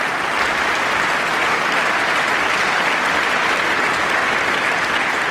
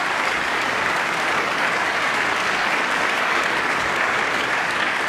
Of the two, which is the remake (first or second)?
second